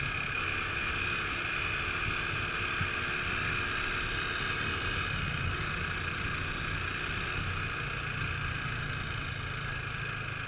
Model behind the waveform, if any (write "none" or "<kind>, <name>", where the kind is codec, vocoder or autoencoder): none